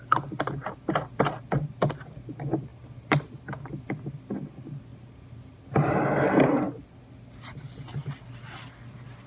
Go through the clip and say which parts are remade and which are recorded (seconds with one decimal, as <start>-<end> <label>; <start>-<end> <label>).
0.0-2.7 recorded; 2.7-3.4 remade; 3.4-4.9 recorded; 4.9-6.6 remade; 6.6-9.3 recorded